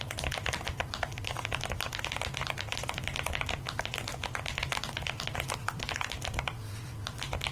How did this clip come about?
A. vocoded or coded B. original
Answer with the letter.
B